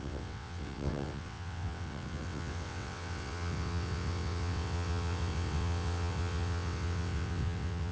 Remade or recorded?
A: remade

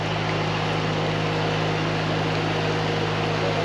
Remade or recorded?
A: recorded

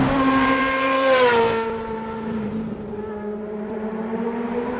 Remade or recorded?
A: remade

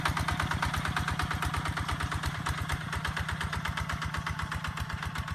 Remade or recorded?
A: recorded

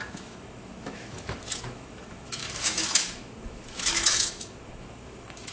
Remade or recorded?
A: remade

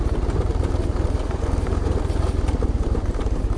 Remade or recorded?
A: recorded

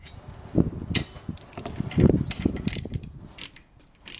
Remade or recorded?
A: remade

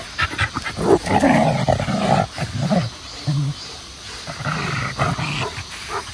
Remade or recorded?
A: recorded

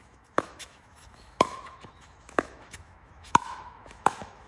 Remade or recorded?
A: remade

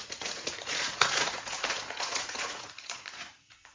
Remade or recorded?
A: remade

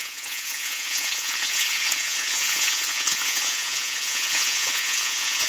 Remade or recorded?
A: remade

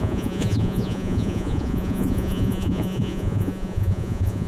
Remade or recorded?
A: remade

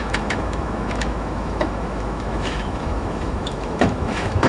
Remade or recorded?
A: remade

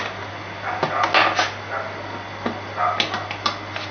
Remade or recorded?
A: recorded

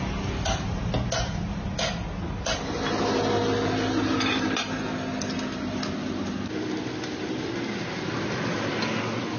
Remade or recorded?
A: recorded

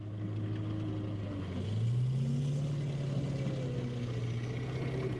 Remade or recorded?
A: recorded